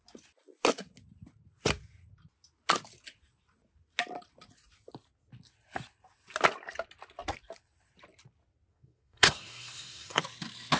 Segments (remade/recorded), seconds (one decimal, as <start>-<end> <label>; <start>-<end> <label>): 0.0-8.7 recorded; 8.7-10.2 remade; 10.2-10.8 recorded